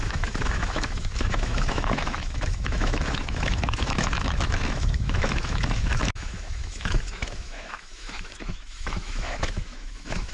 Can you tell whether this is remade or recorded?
remade